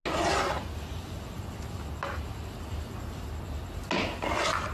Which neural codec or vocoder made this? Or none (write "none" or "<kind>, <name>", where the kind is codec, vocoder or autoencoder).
none